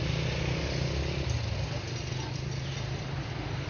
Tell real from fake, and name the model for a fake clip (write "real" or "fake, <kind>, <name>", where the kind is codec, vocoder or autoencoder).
real